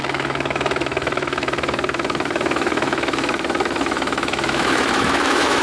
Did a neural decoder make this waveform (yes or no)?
yes